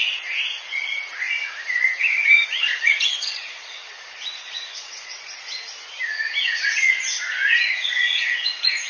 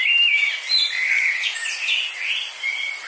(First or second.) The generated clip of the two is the first